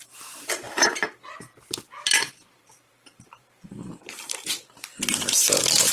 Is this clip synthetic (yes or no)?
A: yes